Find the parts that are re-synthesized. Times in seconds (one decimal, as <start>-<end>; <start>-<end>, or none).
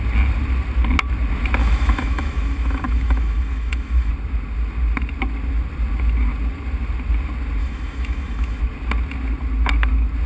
1.6-4.1; 7.6-8.6